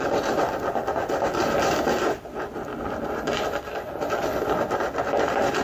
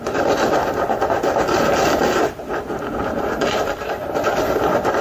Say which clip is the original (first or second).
first